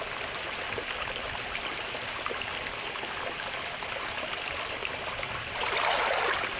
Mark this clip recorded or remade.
recorded